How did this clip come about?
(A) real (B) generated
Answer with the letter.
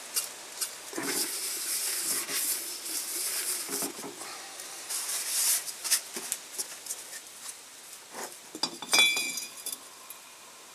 A